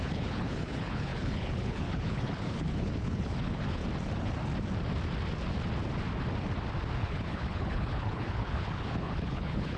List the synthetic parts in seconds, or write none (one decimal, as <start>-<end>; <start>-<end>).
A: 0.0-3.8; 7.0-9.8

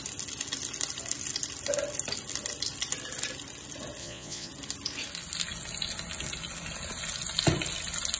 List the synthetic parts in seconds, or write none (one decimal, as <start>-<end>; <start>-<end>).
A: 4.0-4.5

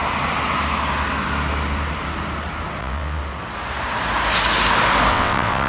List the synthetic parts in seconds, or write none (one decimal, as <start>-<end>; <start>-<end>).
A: 2.8-3.2; 5.1-5.7

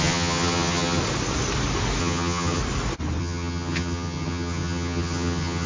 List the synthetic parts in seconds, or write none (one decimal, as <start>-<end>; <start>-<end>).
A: 0.0-1.0; 2.0-2.6; 3.2-5.7